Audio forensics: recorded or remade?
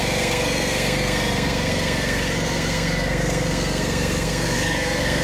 remade